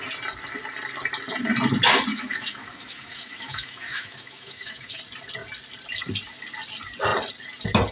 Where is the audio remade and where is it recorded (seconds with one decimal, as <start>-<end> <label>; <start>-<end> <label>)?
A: 0.0-2.1 recorded; 2.1-5.0 remade; 5.0-7.9 recorded